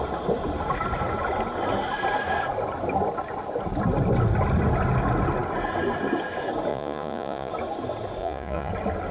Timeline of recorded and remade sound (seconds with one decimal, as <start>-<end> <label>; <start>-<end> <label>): 0.0-6.7 recorded; 6.7-7.5 remade; 7.5-8.2 recorded; 8.2-8.7 remade; 8.7-9.1 recorded